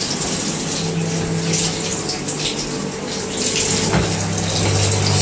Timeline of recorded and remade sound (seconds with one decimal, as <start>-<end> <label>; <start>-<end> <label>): 0.0-5.2 recorded